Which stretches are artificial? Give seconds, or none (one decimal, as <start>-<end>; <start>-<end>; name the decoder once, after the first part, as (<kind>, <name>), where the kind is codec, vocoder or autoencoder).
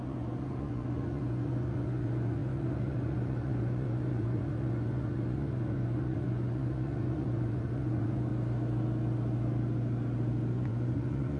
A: 0.0-8.3 (vocoder, Vocos); 10.5-11.4